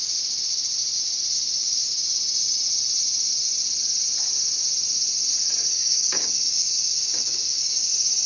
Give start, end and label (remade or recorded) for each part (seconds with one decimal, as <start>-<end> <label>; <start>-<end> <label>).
0.0-5.7 recorded; 5.7-7.9 remade; 7.9-8.3 recorded